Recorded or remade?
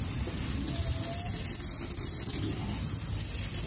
recorded